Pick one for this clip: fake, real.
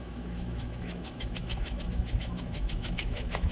fake